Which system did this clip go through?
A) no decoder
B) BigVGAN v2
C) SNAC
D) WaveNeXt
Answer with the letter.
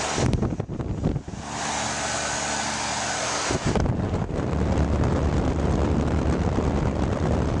A